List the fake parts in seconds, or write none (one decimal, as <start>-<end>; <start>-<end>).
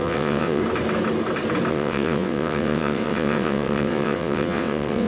0.0-0.6; 1.7-5.1